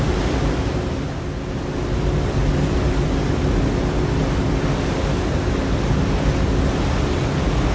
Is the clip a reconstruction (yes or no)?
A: no